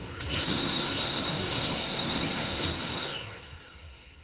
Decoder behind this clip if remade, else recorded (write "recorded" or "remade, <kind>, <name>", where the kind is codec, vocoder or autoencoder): remade, codec, SNAC